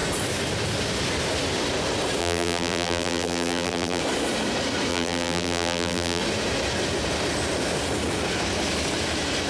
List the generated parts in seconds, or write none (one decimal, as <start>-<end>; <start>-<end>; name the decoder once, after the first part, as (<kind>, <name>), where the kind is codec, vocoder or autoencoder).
2.2-4.0 (vocoder, BigVGAN v2); 4.9-6.2